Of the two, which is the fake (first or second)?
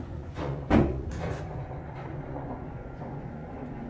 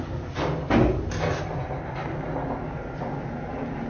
first